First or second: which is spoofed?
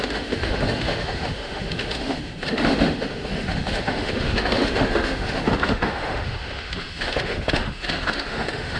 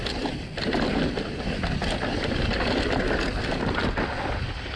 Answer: first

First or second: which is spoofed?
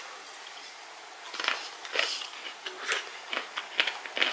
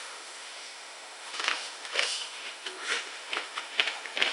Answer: second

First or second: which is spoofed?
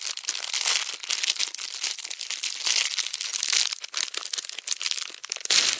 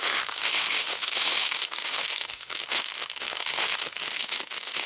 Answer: second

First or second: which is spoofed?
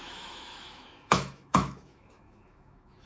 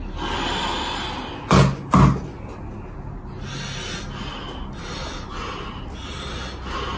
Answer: first